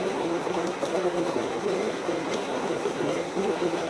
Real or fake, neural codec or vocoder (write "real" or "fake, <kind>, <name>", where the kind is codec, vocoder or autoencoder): fake, codec, SNAC